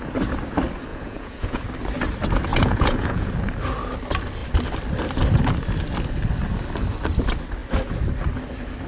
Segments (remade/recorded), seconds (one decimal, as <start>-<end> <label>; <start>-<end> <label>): 0.0-0.9 recorded; 0.9-1.6 remade; 1.6-2.5 recorded; 2.5-3.3 remade; 3.3-8.9 recorded